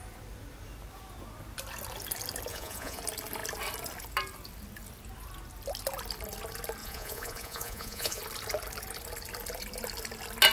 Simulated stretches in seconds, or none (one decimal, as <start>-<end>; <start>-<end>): 2.5-3.0; 6.8-8.2